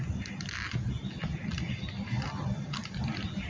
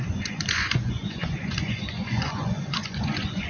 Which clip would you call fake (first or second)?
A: second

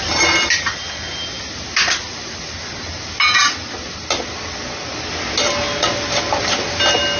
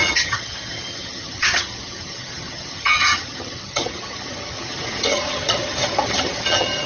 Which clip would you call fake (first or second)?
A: second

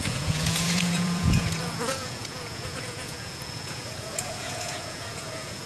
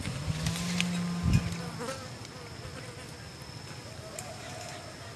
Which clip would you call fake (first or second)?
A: first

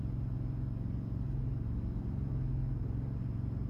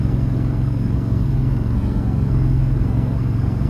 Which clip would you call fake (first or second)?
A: second